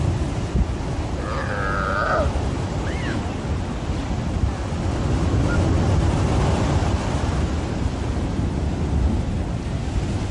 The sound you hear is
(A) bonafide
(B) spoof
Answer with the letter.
A